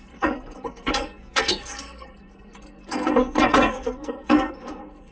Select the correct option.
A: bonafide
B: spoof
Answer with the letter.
B